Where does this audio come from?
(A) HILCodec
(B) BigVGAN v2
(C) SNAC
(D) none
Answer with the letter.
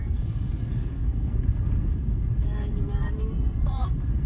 C